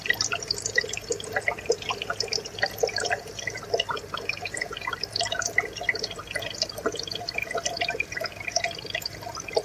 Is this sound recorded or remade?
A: remade